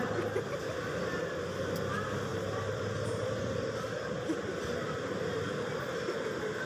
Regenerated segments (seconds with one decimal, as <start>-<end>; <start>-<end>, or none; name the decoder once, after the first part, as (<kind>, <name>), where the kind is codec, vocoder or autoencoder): 2.3-3.4 (vocoder, BigVGAN v2)